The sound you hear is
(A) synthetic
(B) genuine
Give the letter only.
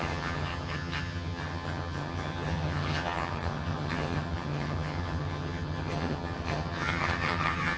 A